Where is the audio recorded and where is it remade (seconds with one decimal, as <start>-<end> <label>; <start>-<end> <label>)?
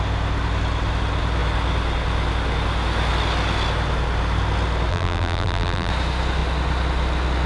0.0-4.9 recorded; 4.9-5.9 remade; 5.9-7.5 recorded